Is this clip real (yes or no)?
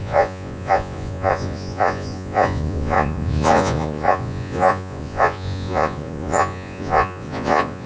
no